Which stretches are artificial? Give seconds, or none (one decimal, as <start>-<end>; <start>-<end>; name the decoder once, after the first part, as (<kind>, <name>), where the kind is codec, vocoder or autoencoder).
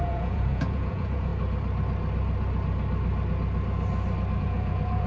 0.0-1.3 (vocoder, Vocos); 4.4-5.1